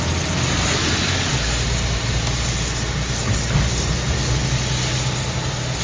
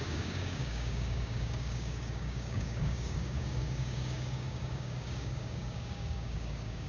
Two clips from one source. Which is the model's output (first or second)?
second